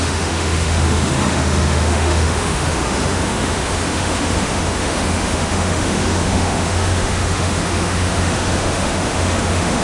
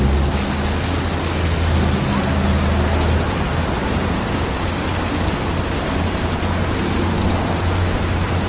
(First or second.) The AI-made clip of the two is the first